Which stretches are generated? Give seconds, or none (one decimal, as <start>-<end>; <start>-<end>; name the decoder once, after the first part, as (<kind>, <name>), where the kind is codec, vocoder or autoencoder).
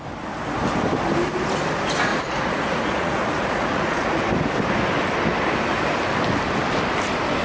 2.1-4.2 (vocoder, Vocos)